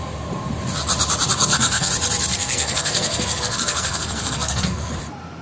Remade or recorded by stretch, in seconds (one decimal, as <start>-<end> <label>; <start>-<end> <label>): 0.0-1.4 recorded; 1.4-1.9 remade; 1.9-2.3 recorded; 2.3-4.9 remade; 4.9-5.4 recorded